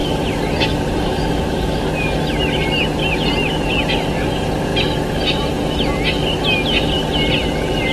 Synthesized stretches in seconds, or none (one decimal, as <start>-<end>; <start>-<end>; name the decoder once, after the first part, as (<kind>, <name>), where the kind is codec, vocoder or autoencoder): 0.0-2.2 (vocoder, BigVGAN v2)